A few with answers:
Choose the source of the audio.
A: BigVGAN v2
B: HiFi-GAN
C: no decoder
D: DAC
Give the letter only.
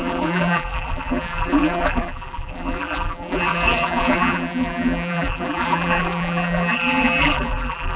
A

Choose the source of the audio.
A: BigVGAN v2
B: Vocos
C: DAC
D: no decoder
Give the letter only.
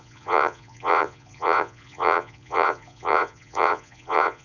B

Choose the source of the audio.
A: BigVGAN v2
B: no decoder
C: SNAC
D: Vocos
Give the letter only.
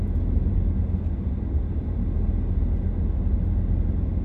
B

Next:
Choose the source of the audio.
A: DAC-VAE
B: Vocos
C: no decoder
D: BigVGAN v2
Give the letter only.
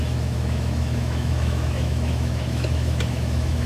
A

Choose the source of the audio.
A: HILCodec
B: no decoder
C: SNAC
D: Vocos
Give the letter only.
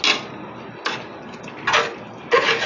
B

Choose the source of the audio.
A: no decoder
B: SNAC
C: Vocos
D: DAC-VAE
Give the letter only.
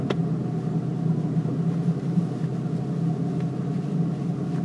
A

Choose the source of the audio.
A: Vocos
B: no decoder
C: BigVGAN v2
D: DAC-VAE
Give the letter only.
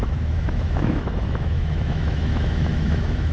D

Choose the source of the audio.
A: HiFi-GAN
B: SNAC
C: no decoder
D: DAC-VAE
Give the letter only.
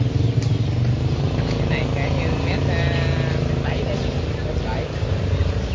C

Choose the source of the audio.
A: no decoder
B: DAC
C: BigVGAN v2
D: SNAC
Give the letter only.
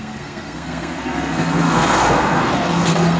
D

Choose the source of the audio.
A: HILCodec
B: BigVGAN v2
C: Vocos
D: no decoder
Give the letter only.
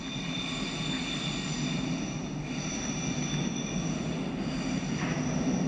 D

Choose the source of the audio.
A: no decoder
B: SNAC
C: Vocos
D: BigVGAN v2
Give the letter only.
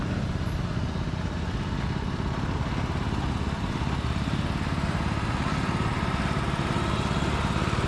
A